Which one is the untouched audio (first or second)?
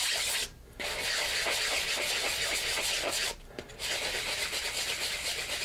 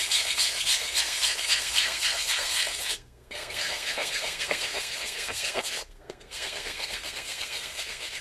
first